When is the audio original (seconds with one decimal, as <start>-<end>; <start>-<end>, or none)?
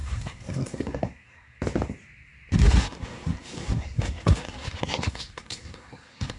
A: 1.6-2.5